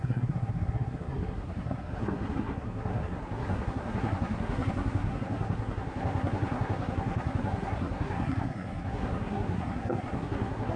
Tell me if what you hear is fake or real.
fake